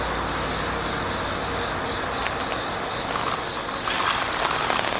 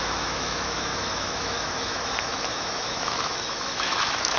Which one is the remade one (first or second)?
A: second